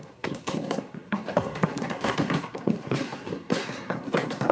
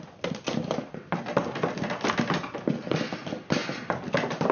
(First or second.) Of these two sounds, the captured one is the second